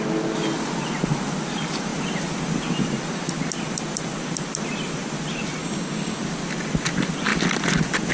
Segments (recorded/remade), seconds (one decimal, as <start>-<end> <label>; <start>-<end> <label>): 0.0-5.6 recorded; 5.6-6.2 remade; 6.2-8.1 recorded